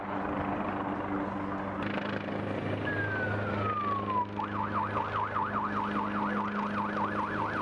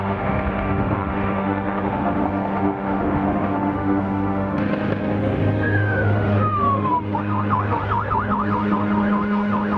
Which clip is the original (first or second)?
first